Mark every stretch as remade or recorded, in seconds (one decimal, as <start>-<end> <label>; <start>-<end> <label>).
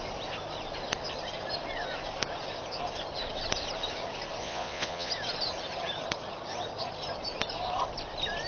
0.0-4.4 recorded; 4.4-5.1 remade; 5.1-8.5 recorded